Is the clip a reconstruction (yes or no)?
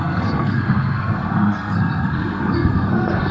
yes